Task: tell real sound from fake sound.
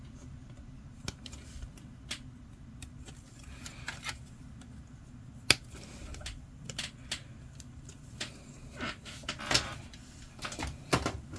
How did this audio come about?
real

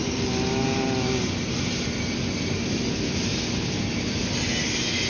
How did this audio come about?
real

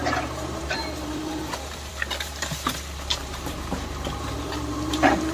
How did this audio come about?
fake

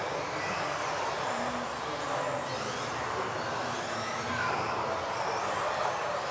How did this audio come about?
real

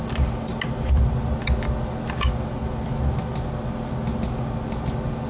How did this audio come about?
real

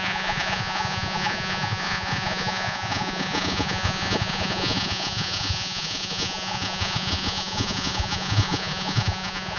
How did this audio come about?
fake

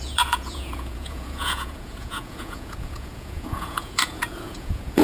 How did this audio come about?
fake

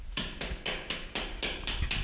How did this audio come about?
real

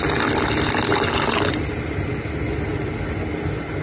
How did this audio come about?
real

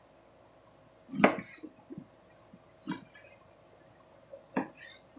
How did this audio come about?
real